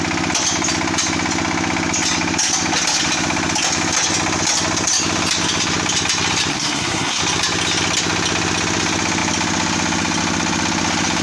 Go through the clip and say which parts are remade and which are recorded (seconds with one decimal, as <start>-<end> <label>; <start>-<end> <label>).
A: 0.0-6.5 recorded; 6.5-7.2 remade; 7.2-11.2 recorded